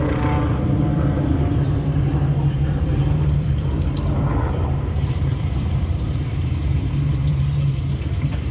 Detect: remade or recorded remade